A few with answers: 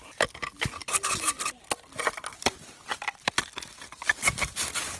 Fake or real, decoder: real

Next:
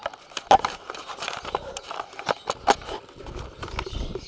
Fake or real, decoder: real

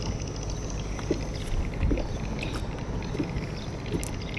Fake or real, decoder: real